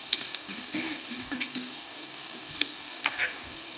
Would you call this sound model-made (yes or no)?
yes